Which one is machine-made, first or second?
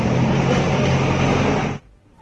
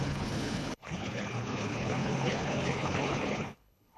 second